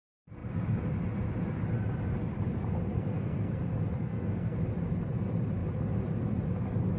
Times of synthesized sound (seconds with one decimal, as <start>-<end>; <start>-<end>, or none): 2.9-3.6; 4.1-4.6